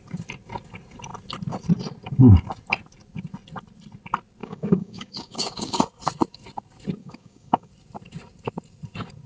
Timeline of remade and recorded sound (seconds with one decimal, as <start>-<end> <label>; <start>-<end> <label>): 0.0-4.4 recorded; 4.4-5.8 remade; 5.8-7.0 recorded; 7.0-7.7 remade; 7.7-9.3 recorded